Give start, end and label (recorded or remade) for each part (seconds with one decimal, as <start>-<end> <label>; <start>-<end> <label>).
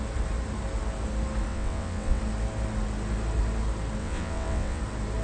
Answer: 0.0-1.5 recorded; 1.5-2.2 remade; 2.2-4.0 recorded; 4.0-4.8 remade; 4.8-5.2 recorded